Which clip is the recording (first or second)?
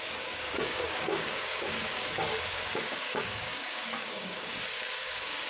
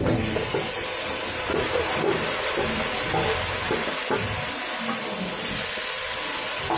second